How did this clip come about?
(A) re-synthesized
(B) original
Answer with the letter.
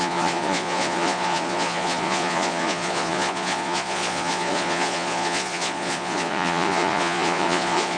A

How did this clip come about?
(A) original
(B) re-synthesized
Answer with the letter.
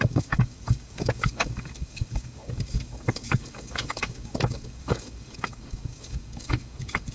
B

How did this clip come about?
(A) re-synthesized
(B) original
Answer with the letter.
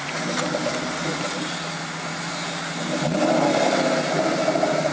B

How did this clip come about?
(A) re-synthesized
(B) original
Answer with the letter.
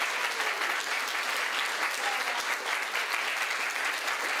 B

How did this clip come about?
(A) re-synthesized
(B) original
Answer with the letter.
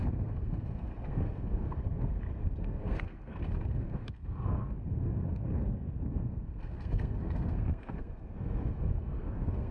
A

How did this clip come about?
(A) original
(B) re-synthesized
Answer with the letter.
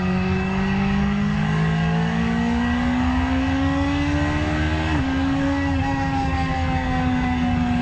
B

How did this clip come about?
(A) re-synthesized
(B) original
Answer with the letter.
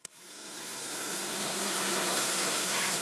A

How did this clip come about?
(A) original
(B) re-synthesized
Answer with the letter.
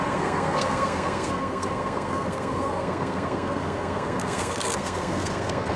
B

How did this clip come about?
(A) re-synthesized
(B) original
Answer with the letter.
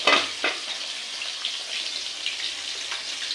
B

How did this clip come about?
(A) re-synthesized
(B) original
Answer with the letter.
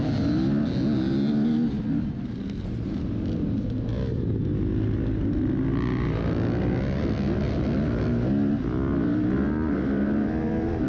B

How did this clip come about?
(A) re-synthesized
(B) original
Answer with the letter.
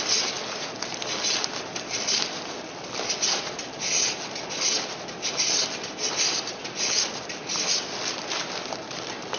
B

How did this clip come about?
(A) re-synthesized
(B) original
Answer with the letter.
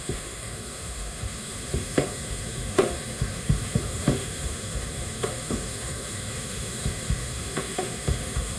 A